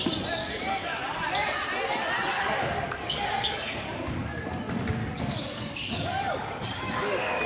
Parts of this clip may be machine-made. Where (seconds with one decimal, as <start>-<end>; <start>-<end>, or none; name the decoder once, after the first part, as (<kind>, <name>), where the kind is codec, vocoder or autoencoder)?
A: 0.4-1.2 (codec, DAC); 2.3-4.4; 5.0-7.5